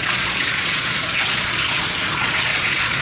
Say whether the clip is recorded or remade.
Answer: remade